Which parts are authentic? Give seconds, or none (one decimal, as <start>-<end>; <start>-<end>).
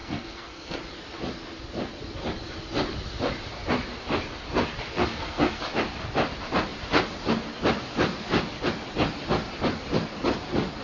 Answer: 0.8-4.7; 5.6-10.8